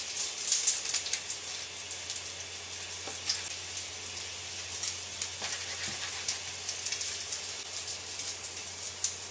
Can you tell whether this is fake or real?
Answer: real